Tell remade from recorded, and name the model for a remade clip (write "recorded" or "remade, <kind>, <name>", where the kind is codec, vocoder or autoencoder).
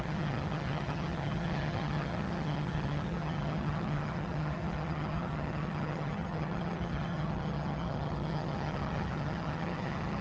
remade, vocoder, HiFi-GAN